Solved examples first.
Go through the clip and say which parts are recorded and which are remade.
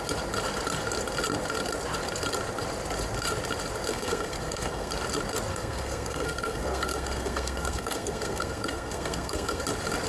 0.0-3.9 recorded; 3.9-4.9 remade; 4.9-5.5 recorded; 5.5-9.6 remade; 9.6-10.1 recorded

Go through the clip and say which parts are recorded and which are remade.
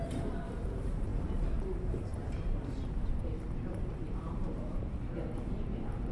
0.0-6.1 remade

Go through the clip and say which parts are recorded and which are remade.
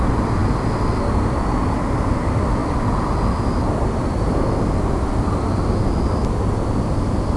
0.0-7.4 recorded